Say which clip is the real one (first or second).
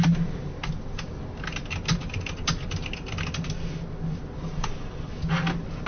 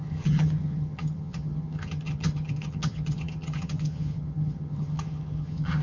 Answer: first